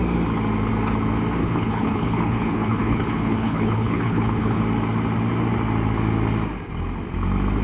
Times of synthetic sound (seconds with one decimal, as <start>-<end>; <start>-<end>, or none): 1.4-4.6